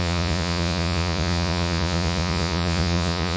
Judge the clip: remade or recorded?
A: remade